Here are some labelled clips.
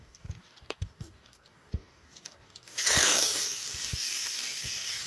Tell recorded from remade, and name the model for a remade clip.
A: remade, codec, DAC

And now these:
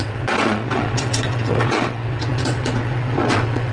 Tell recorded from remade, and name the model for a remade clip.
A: remade, vocoder, WaveNeXt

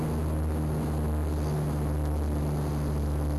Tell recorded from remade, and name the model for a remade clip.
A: recorded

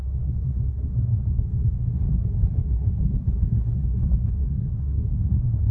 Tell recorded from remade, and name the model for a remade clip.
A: remade, codec, SNAC